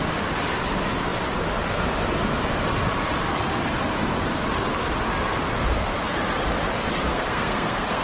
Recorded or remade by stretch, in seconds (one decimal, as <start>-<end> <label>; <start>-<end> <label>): 0.0-7.1 recorded; 7.1-8.0 remade